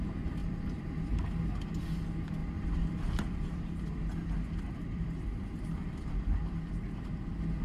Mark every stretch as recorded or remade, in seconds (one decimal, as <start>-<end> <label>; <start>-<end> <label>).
0.0-0.4 recorded; 0.4-1.1 remade; 1.1-2.4 recorded; 2.4-6.6 remade; 6.6-7.6 recorded